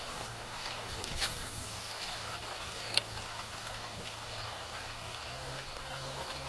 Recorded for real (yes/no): no